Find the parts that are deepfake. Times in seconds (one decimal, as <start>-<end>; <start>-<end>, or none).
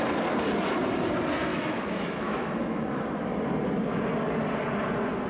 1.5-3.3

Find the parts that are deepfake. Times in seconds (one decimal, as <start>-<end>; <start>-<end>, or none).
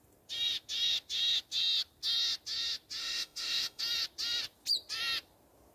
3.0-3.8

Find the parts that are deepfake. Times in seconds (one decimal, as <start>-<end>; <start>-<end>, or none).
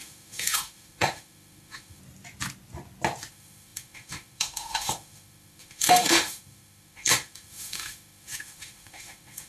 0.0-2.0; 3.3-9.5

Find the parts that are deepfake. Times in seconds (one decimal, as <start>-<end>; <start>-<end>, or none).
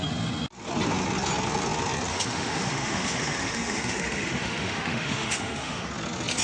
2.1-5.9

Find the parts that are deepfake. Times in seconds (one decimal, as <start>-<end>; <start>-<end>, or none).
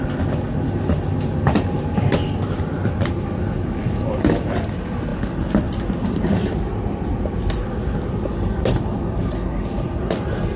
none